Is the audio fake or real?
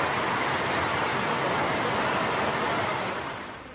real